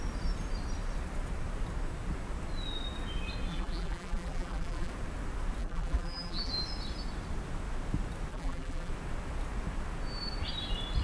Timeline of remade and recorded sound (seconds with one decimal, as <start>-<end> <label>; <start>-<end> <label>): 0.0-3.5 recorded; 3.5-4.9 remade; 4.9-5.6 recorded; 5.6-6.5 remade; 6.5-8.3 recorded; 8.3-8.9 remade; 8.9-11.0 recorded